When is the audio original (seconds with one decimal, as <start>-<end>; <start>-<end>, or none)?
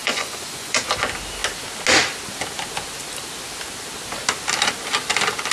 0.8-5.5